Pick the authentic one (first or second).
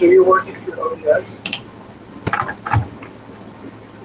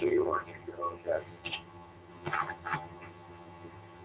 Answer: first